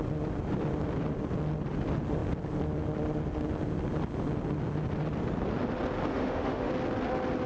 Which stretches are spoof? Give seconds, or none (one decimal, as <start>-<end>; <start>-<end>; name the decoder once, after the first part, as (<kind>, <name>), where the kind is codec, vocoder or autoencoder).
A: 6.1-6.7 (autoencoder, DAC-VAE)